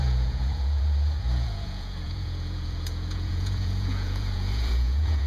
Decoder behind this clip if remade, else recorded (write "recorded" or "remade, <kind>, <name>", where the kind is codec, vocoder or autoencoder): remade, vocoder, Vocos